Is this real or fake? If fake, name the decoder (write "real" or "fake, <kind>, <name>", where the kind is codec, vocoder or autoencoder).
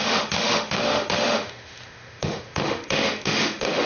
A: fake, autoencoder, DAC-VAE